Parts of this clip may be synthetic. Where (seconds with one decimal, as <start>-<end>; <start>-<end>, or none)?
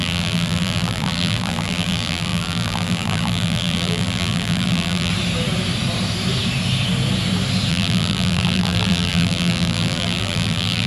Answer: 0.0-5.1; 7.7-10.9